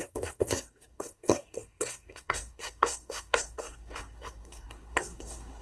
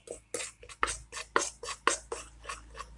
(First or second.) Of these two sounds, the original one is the second